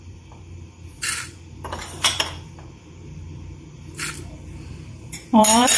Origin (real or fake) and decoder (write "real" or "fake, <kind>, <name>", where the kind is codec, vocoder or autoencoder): fake, vocoder, BigVGAN v2